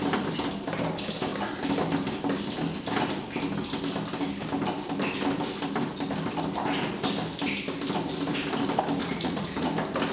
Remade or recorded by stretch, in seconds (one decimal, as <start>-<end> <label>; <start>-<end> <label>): 0.0-9.0 recorded; 9.0-9.7 remade; 9.7-10.1 recorded